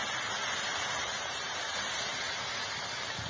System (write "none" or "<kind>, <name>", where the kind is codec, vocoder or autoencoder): none